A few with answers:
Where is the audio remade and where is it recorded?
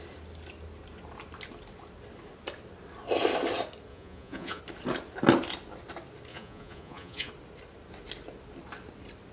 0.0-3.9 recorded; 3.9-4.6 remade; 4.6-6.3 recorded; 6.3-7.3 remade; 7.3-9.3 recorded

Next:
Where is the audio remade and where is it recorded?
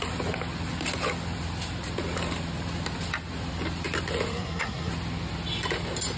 0.0-4.3 recorded; 4.3-4.9 remade; 4.9-6.2 recorded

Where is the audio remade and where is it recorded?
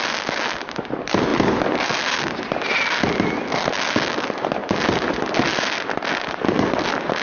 0.0-7.2 recorded